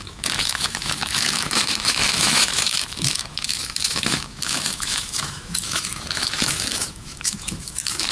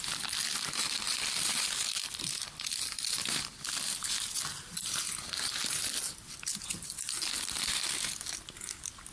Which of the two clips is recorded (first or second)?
second